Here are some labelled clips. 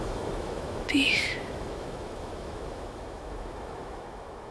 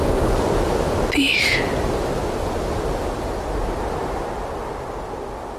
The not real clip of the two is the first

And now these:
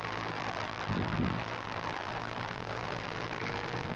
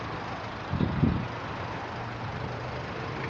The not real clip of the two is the first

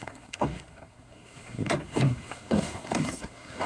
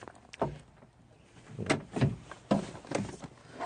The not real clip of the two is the first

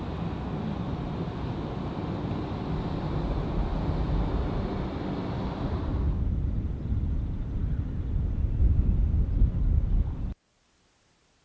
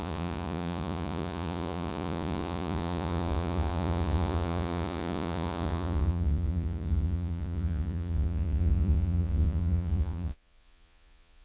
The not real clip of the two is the second